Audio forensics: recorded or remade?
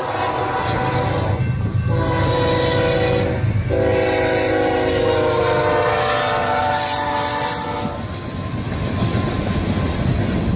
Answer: recorded